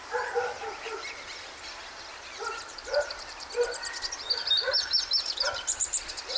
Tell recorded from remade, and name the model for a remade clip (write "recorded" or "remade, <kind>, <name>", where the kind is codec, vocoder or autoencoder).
recorded